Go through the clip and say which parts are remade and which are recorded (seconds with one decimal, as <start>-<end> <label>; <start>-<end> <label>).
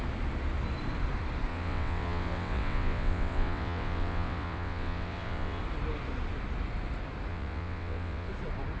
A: 0.0-1.5 recorded; 1.5-5.6 remade; 5.6-7.3 recorded; 7.3-8.3 remade; 8.3-8.8 recorded